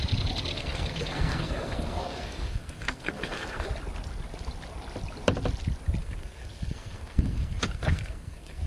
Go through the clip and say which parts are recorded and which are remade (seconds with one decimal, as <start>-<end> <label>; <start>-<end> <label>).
0.0-0.5 recorded; 0.5-3.7 remade; 3.7-6.0 recorded; 6.0-8.7 remade